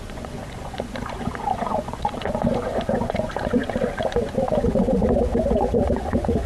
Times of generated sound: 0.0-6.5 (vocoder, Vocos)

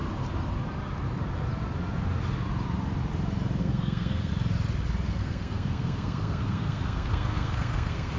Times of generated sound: 3.6-4.3 (codec, SNAC); 5.1-8.2

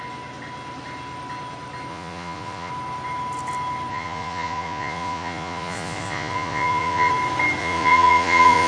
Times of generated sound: 1.9-2.7 (vocoder, Vocos); 3.9-7.1; 7.6-8.7